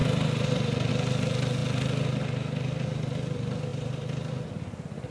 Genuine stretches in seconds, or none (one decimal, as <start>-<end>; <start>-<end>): 0.9-3.7; 4.5-5.1